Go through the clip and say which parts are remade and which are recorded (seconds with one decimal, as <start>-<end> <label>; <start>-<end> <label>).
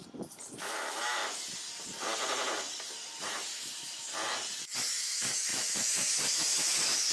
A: 0.0-0.5 recorded; 0.5-1.2 remade; 1.2-3.2 recorded; 3.2-4.1 remade; 4.1-4.9 recorded; 4.9-7.1 remade